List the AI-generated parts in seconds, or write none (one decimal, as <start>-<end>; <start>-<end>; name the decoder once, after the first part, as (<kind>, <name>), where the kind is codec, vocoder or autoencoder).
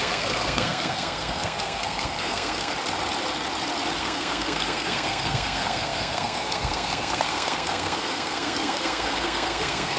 0.0-2.7 (codec, SNAC); 4.0-10.0